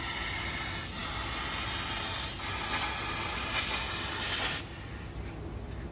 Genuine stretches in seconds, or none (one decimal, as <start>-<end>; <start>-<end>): 0.0-5.9